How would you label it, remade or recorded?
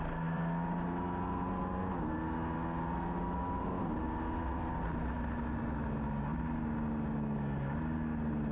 recorded